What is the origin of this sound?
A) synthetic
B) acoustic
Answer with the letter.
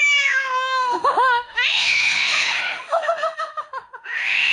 A